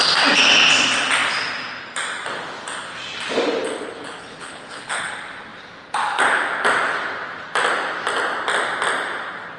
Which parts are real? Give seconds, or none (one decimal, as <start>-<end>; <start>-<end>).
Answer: 0.0-4.2; 5.1-9.6